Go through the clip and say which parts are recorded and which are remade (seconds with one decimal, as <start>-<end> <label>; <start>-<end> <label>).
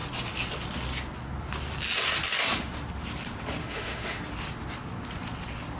0.0-3.6 recorded; 3.6-4.2 remade; 4.2-5.8 recorded